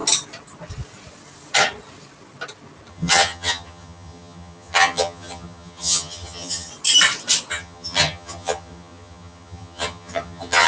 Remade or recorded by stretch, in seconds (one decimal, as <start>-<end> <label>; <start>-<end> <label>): 0.0-2.9 recorded; 2.9-6.7 remade; 6.7-7.5 recorded; 7.5-10.7 remade

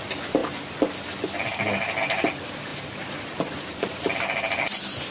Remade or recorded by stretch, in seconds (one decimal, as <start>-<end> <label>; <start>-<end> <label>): 0.0-2.7 recorded; 2.7-3.8 remade; 3.8-5.1 recorded

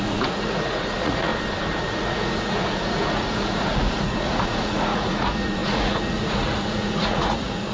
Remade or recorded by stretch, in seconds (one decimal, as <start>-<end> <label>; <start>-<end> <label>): 0.0-1.3 remade; 1.3-1.8 recorded; 1.8-7.7 remade

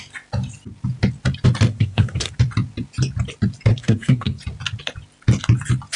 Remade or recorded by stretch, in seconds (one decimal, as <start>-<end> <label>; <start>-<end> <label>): 0.0-1.7 recorded; 1.7-2.3 remade; 2.3-3.7 recorded; 3.7-4.4 remade; 4.4-6.0 recorded

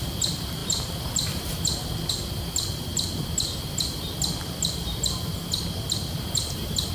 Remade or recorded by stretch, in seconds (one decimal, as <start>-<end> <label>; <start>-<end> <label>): 0.0-6.9 recorded

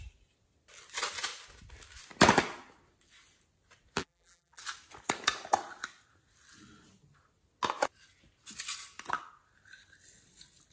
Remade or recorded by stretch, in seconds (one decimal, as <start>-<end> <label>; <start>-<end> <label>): 0.0-4.0 recorded; 4.0-4.6 remade; 4.6-10.7 recorded

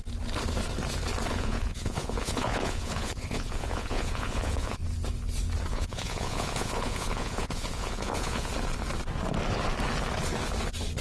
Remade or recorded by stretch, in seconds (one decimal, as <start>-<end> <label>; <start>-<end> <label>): 0.0-1.3 recorded; 1.3-4.8 remade; 4.8-5.7 recorded; 5.7-8.5 remade; 8.5-11.0 recorded

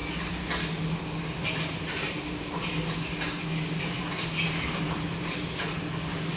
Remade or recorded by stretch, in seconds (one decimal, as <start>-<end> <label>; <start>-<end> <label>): 0.0-6.4 recorded